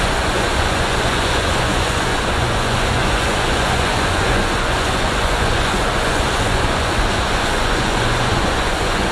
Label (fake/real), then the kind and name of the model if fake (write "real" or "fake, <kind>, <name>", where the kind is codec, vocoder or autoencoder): fake, vocoder, Vocos